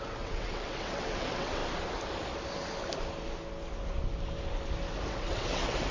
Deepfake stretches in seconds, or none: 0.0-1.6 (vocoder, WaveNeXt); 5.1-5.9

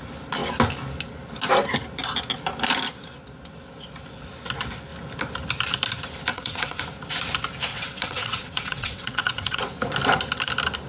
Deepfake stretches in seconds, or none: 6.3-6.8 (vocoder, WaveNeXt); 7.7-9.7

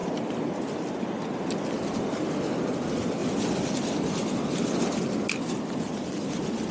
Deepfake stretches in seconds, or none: none

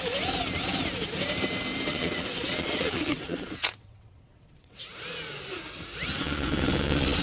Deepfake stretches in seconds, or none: 1.9-4.9 (vocoder, WaveNeXt); 6.2-7.2